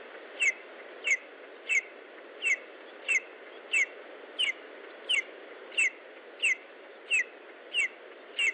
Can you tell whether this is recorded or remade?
recorded